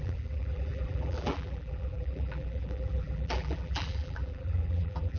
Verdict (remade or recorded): remade